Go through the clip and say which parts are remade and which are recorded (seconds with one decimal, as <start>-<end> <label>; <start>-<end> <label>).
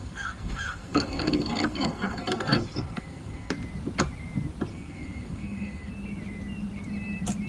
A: 0.0-3.5 remade; 3.5-4.7 recorded; 4.7-5.9 remade; 5.9-7.5 recorded